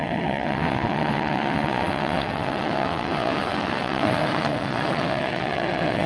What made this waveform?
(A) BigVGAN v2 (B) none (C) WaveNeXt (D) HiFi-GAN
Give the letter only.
C